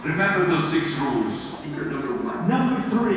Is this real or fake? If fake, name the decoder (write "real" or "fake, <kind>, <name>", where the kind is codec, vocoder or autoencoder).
fake, vocoder, Vocos